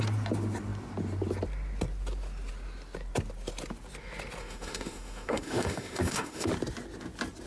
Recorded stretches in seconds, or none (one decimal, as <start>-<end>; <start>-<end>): 0.0-4.4; 6.5-7.5